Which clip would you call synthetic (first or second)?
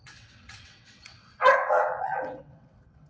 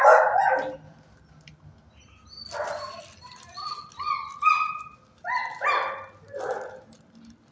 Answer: first